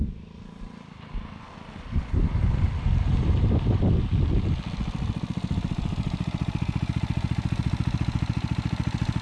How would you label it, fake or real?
real